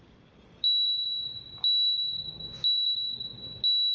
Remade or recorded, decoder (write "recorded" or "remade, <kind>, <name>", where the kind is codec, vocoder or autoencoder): recorded